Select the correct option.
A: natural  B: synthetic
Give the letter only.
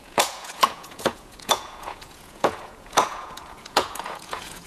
B